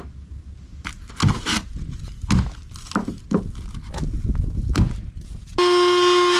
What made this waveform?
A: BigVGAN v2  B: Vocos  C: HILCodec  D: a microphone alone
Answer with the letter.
D